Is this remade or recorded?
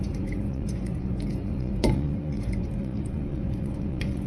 remade